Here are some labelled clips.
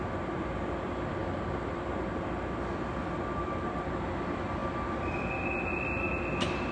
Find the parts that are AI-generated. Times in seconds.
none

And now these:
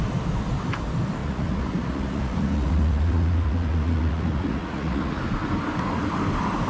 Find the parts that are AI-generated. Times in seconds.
1.2-5.2 (vocoder, Vocos)